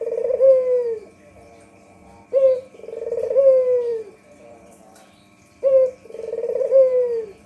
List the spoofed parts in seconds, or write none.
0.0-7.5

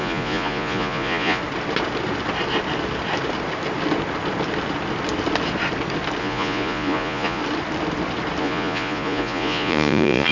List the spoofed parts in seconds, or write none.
0.0-1.4; 6.2-7.4; 8.4-10.3